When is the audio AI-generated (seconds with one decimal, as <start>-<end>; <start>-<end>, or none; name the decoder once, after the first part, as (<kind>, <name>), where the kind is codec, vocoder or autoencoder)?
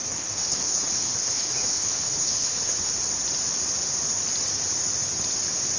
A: 0.0-2.9 (codec, HILCodec)